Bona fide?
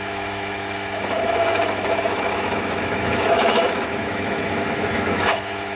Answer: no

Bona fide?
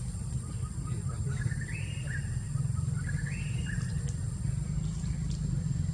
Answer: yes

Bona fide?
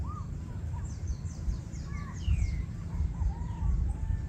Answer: no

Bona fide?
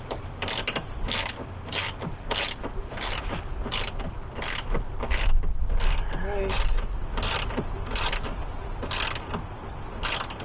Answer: yes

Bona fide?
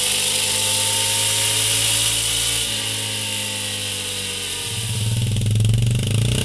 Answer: yes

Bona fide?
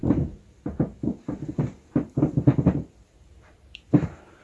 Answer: no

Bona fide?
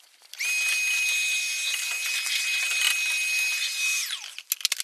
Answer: yes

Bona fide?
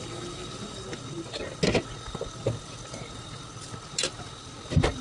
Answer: yes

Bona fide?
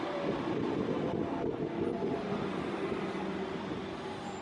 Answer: yes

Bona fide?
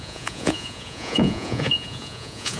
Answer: no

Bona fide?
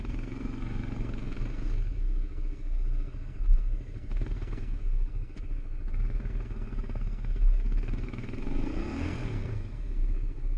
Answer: no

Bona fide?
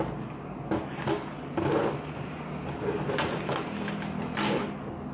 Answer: yes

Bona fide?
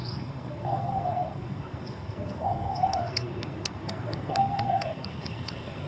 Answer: no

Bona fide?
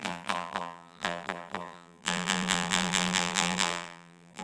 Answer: no